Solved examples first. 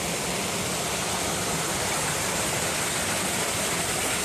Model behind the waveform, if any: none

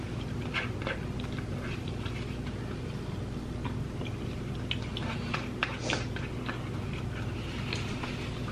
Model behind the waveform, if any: vocoder, BigVGAN v2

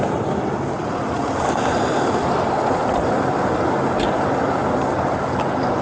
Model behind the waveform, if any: none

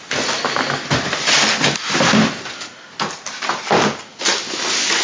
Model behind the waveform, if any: none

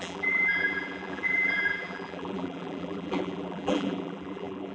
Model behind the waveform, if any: vocoder, BigVGAN v2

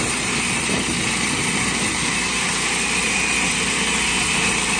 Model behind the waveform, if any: none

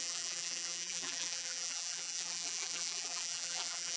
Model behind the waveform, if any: vocoder, BigVGAN v2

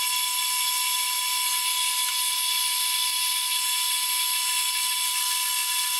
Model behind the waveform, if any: none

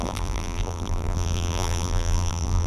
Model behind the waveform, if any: vocoder, BigVGAN v2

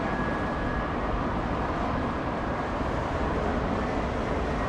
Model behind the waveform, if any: vocoder, BigVGAN v2